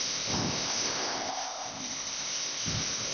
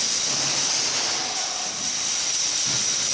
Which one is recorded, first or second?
second